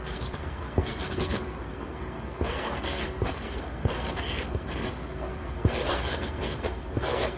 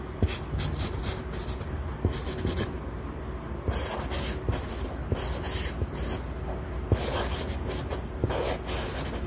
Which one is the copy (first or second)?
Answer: first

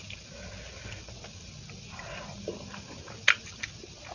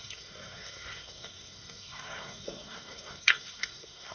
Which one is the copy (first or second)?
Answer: second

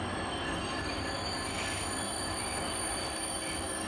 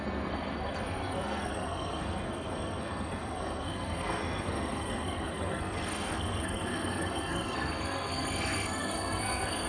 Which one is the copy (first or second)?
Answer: second